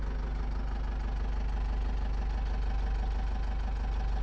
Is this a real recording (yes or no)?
yes